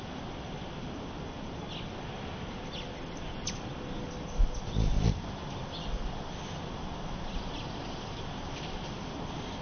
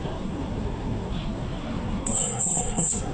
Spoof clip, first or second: second